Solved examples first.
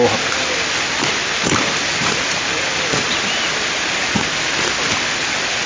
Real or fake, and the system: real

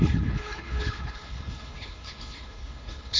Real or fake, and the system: fake, codec, HILCodec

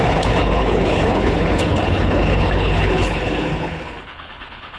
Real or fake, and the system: fake, codec, HILCodec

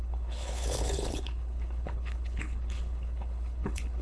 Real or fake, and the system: fake, codec, HILCodec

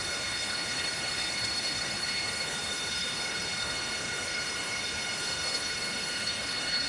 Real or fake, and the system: fake, codec, HILCodec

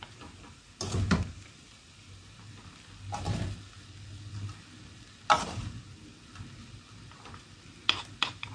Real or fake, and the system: real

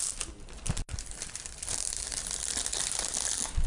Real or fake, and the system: real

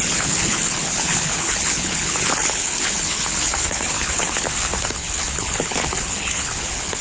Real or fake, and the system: fake, codec, HILCodec